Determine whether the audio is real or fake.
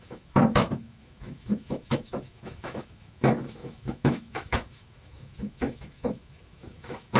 fake